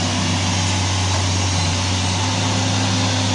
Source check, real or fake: real